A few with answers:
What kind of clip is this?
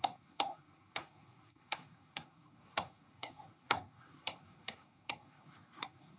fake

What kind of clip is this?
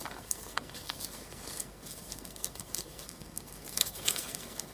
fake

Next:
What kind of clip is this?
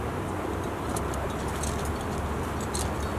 real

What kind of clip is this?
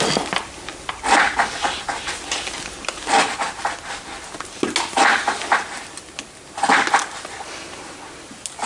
real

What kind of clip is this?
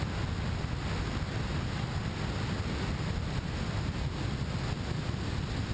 real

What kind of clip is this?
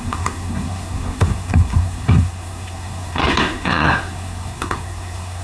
fake